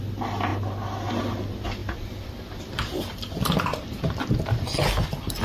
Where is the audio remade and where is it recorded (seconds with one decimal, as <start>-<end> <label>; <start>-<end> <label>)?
0.0-1.8 recorded; 1.8-4.8 remade; 4.8-5.4 recorded